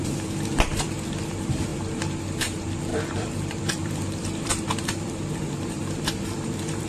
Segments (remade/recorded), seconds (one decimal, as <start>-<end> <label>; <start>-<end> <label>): 0.0-1.7 remade; 1.7-2.3 recorded; 2.3-6.9 remade

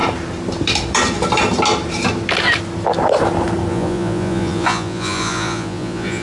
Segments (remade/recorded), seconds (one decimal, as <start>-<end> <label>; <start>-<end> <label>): 0.0-3.7 recorded; 3.7-6.2 remade

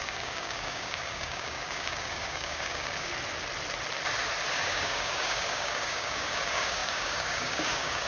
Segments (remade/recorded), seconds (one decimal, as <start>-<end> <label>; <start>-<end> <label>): 0.0-3.1 remade; 3.1-4.5 recorded; 4.5-8.1 remade

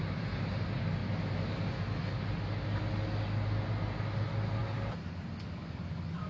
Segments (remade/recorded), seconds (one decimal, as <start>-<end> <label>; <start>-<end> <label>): 0.0-6.3 recorded

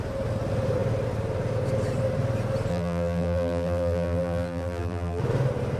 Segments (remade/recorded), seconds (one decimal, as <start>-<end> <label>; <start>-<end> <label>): 0.0-2.7 recorded; 2.7-5.2 remade; 5.2-5.8 recorded

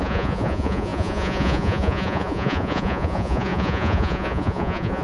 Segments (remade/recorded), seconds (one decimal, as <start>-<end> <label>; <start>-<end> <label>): 0.0-5.0 remade